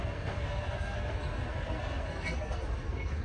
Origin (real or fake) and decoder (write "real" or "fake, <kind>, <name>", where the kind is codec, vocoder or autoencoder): fake, codec, SNAC